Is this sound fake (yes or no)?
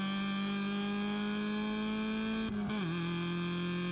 no